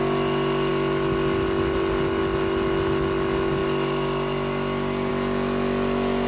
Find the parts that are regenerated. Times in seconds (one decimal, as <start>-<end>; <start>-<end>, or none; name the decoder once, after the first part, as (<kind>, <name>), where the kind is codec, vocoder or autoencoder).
none